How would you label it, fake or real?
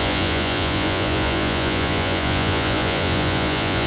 fake